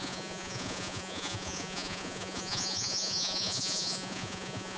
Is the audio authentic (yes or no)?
no